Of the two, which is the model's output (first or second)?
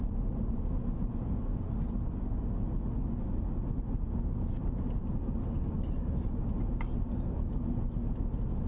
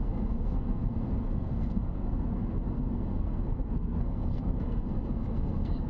second